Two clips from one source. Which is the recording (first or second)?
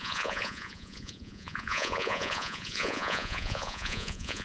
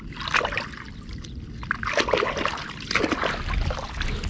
second